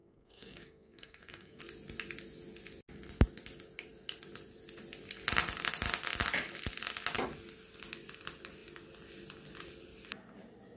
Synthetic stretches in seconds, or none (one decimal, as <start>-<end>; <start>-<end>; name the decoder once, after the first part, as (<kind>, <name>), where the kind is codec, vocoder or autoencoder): 0.0-1.6 (codec, SNAC)